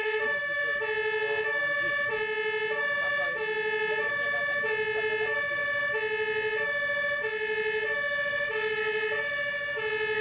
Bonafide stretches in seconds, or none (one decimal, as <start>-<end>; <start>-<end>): 0.6-10.2